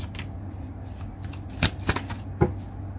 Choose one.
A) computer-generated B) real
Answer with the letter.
B